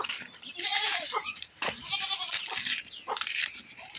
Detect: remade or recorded remade